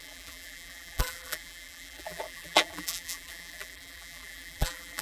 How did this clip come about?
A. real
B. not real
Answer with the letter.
B